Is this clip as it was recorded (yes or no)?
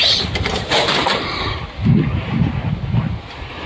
yes